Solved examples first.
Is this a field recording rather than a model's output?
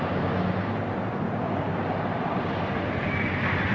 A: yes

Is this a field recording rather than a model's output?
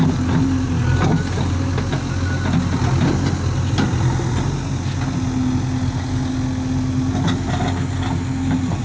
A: yes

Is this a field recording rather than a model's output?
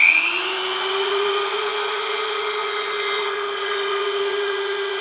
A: no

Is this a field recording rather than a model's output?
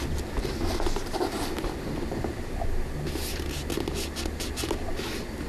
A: yes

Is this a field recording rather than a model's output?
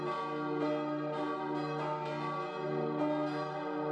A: yes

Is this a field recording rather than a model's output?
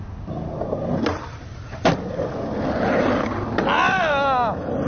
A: yes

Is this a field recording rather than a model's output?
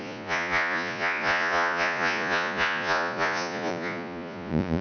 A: no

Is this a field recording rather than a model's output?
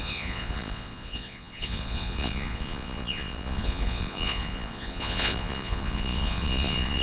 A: no